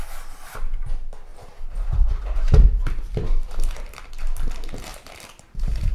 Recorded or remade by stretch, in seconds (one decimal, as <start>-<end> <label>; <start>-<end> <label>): 0.0-1.3 recorded; 1.3-4.1 remade; 4.1-4.9 recorded; 4.9-5.9 remade